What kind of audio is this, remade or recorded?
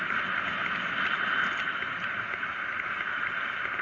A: recorded